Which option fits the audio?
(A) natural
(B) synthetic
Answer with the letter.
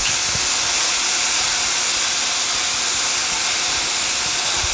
A